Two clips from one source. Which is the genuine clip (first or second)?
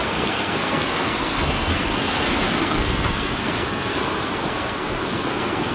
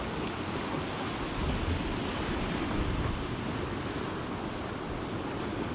second